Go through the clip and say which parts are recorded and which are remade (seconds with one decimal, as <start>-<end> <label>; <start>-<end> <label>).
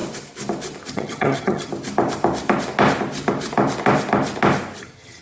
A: 0.0-0.9 recorded; 0.9-1.7 remade; 1.7-4.8 recorded; 4.8-5.2 remade